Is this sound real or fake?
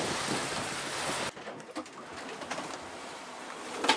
real